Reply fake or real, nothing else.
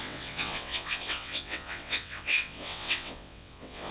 fake